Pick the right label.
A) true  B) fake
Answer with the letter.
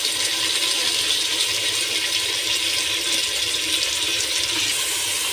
A